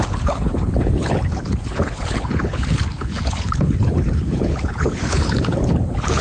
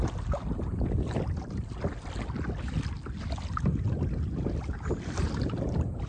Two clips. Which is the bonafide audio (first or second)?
second